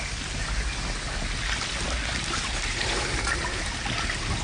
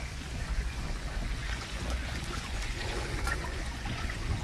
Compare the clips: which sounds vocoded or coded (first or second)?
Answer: second